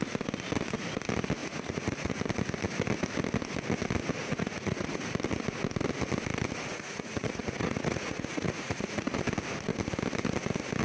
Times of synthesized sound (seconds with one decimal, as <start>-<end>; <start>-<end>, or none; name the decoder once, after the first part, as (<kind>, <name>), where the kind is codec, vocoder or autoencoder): 1.4-2.2 (vocoder, Vocos); 4.2-5.0; 6.7-9.2

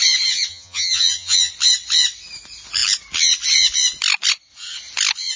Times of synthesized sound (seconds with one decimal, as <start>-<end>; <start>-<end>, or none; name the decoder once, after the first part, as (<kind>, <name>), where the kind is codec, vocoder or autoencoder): 0.5-1.5 (vocoder, HiFi-GAN)

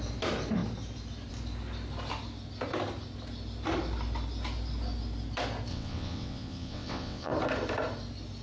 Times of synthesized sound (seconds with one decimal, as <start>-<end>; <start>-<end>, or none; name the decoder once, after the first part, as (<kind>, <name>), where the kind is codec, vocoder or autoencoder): 5.7-7.3 (vocoder, WaveNeXt)

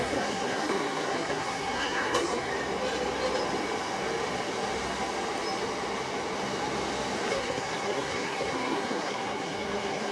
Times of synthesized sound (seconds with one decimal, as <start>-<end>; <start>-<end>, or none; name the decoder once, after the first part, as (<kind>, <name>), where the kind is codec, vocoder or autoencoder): 0.0-2.5 (codec, SNAC); 7.3-10.1

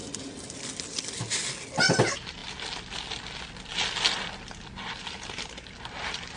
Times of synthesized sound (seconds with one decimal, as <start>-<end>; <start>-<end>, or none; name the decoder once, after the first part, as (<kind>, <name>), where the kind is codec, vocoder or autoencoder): 0.0-0.6 (vocoder, BigVGAN v2)

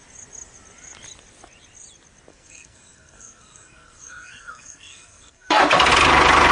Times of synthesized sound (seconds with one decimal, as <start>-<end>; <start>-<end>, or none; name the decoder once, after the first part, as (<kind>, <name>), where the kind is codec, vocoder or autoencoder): 2.3-5.6 (codec, SNAC)

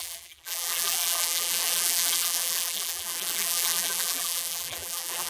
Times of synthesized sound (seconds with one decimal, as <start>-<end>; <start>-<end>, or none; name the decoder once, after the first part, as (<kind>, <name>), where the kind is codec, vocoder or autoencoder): 0.0-5.3 (vocoder, BigVGAN v2)